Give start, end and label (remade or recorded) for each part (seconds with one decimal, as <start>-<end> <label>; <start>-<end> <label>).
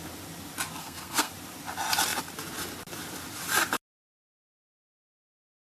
0.0-0.8 recorded; 0.8-1.3 remade; 1.3-5.7 recorded